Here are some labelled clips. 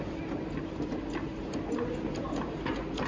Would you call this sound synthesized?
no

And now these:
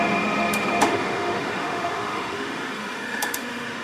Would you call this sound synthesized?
yes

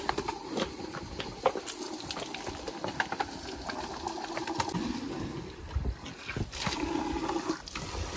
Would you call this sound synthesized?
no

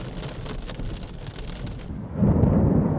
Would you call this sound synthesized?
no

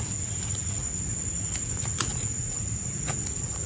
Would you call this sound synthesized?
yes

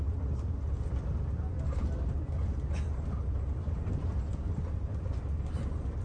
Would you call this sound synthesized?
no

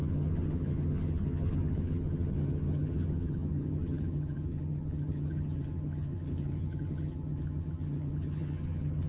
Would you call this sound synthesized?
yes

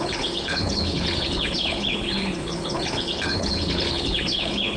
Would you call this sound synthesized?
yes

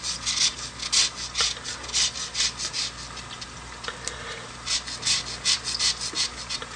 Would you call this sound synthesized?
no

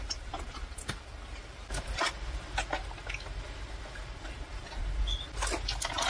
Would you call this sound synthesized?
no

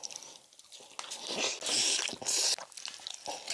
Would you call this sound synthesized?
no